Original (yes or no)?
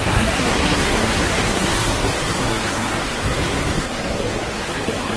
no